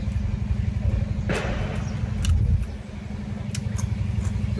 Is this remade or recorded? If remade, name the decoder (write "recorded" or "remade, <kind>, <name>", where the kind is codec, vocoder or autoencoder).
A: recorded